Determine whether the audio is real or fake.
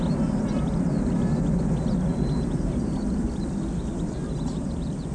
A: real